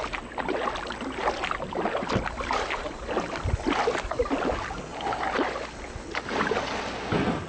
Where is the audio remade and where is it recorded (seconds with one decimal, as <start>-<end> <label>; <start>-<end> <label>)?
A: 0.0-7.5 recorded